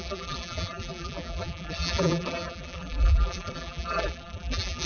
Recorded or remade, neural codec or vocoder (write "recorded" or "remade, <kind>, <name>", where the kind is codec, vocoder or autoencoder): remade, vocoder, BigVGAN v2